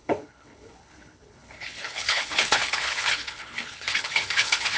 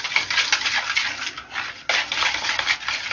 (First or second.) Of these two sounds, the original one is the second